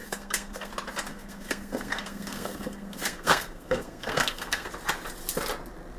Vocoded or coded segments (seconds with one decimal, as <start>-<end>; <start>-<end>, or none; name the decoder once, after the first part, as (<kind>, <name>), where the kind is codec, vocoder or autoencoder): 0.0-0.7 (codec, SNAC); 1.1-4.7